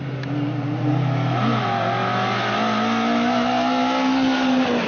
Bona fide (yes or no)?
yes